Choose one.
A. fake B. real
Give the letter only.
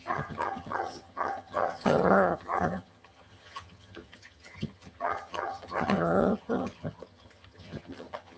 A